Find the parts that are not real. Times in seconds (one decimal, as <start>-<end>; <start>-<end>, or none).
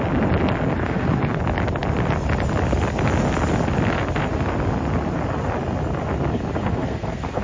0.7-1.4; 6.7-7.4